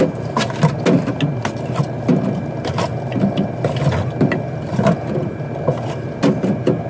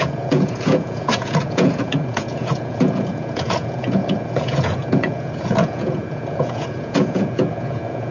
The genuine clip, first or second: first